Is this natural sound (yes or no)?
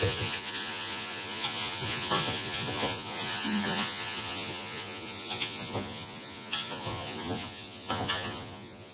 no